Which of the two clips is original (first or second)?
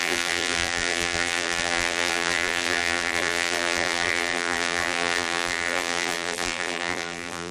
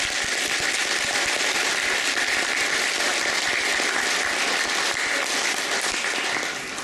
second